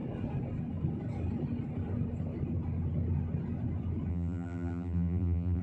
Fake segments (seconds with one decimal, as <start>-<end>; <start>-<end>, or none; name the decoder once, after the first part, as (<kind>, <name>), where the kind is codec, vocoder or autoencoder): 4.1-5.6 (vocoder, BigVGAN v2)